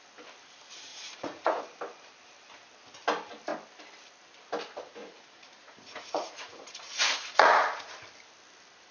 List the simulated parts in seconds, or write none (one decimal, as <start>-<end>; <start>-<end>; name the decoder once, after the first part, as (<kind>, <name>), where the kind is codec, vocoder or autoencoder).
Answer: 0.9-1.6 (vocoder, Vocos); 5.0-7.9